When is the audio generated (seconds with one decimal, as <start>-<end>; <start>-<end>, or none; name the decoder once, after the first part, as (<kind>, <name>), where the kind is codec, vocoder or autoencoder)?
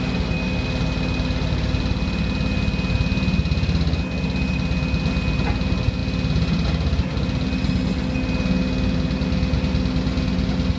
none